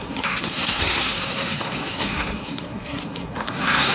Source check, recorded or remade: remade